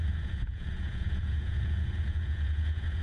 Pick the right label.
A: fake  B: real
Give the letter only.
A